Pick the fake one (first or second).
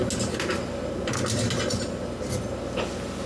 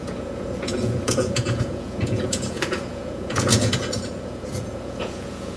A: second